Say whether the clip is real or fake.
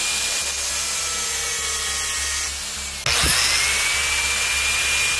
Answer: real